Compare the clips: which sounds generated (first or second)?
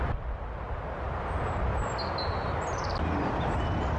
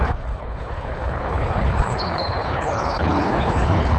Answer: second